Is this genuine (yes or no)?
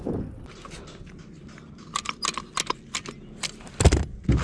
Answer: yes